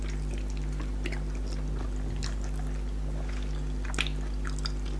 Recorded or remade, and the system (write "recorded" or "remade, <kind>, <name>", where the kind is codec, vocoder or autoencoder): recorded